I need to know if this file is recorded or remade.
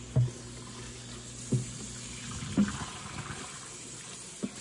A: recorded